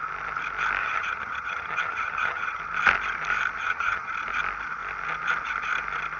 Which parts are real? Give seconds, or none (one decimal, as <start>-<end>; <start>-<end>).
0.0-0.8; 2.6-3.6; 4.1-6.2